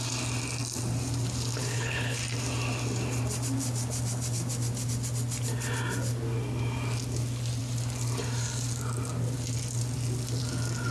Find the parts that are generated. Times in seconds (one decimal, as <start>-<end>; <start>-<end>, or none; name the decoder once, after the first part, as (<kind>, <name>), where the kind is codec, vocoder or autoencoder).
1.6-2.2 (codec, HILCodec)